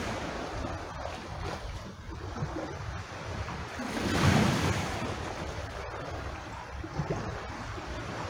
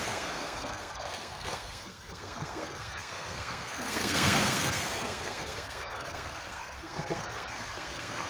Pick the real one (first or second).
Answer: first